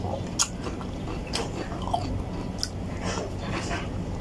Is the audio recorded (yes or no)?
yes